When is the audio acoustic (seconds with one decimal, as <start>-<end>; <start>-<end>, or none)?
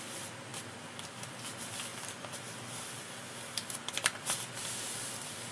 0.0-5.5